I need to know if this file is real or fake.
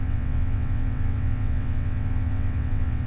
fake